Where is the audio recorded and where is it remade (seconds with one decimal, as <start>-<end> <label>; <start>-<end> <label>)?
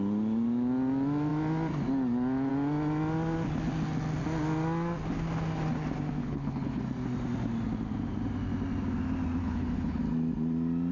0.0-6.2 recorded; 6.2-6.8 remade; 6.8-9.4 recorded; 9.4-10.0 remade; 10.0-10.9 recorded